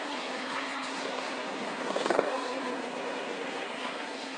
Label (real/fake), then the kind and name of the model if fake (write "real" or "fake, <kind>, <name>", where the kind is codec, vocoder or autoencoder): fake, codec, SNAC